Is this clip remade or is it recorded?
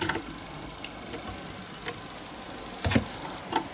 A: recorded